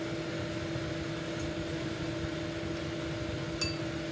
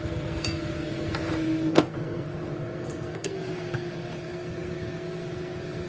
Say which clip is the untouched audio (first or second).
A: first